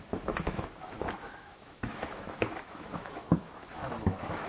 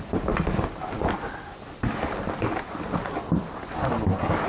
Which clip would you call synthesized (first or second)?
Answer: first